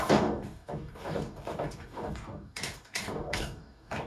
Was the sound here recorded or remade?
remade